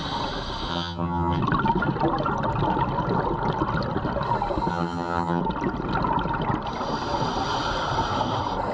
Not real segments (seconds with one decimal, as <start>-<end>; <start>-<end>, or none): 0.7-1.4; 4.7-5.4

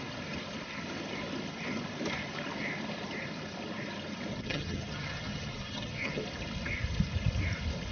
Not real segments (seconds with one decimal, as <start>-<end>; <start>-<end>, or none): 4.3-6.2